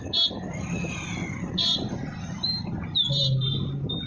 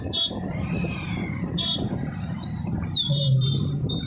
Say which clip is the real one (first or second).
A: first